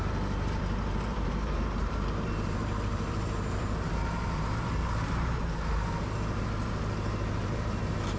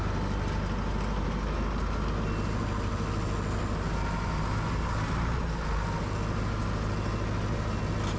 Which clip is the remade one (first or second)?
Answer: first